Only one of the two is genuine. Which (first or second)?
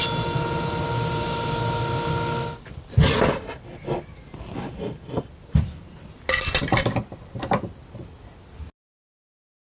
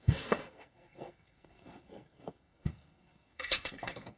first